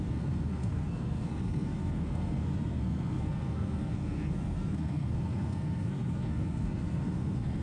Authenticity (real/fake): fake